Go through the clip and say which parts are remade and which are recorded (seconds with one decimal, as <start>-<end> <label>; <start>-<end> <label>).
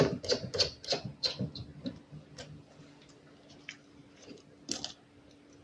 0.0-5.6 recorded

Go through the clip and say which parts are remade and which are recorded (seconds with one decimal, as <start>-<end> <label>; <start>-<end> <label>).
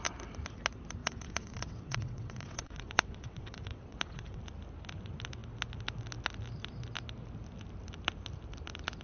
0.0-1.0 recorded; 1.0-4.4 remade; 4.4-9.0 recorded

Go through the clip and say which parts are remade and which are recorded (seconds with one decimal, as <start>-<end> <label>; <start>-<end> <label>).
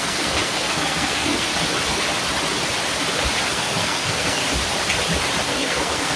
0.0-1.5 remade; 1.5-3.5 recorded; 3.5-4.4 remade; 4.4-5.5 recorded; 5.5-6.2 remade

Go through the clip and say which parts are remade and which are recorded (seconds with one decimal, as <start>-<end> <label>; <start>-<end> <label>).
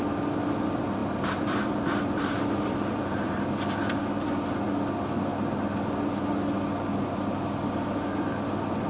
0.0-1.0 recorded; 1.0-3.5 remade; 3.5-8.9 recorded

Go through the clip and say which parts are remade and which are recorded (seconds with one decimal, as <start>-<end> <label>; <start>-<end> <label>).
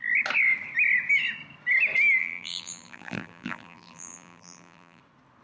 0.0-2.2 recorded; 2.2-5.0 remade; 5.0-5.4 recorded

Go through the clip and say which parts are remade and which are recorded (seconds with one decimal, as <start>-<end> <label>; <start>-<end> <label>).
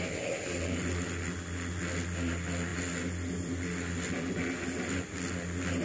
0.0-5.8 recorded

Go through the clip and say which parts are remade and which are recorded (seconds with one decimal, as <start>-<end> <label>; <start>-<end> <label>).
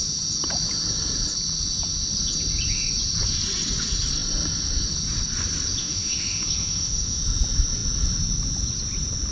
0.0-5.8 recorded; 5.8-7.2 remade; 7.2-9.3 recorded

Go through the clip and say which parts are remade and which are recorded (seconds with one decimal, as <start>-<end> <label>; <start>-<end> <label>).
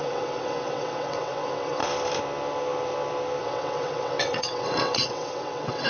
0.0-1.8 remade; 1.8-3.4 recorded; 3.4-5.9 remade